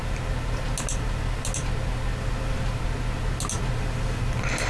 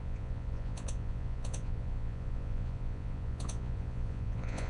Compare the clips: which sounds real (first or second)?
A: first